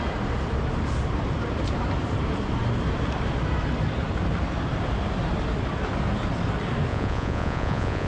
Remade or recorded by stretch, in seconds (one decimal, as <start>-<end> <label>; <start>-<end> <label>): 0.0-6.9 recorded; 6.9-8.1 remade